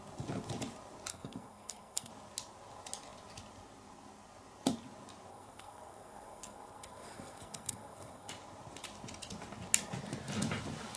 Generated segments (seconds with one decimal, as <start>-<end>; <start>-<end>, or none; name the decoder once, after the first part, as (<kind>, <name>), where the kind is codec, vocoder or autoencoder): 1.1-2.1 (codec, SNAC); 5.3-8.3